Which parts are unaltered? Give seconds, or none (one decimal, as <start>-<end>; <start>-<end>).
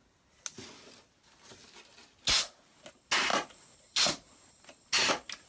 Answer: 0.0-5.5